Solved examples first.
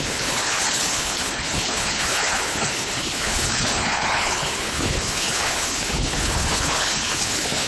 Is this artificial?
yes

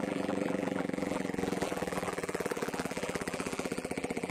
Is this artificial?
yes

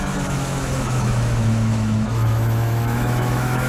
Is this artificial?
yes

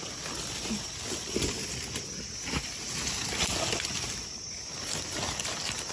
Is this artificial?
no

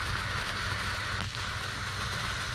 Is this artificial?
no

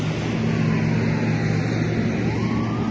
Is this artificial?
no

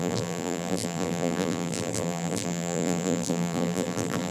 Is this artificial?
yes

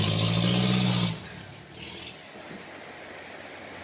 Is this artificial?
no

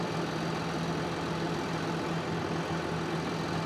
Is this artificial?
no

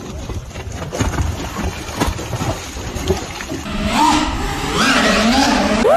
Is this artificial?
no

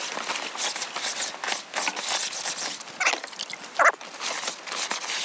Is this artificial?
no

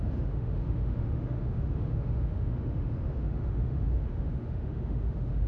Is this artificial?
yes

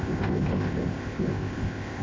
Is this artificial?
yes